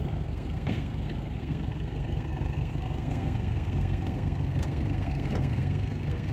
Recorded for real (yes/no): no